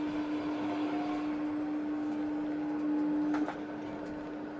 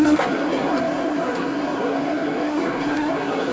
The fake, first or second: second